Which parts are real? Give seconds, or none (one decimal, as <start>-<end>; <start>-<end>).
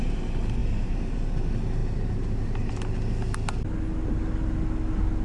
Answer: 0.0-0.6; 1.3-1.8; 2.9-5.2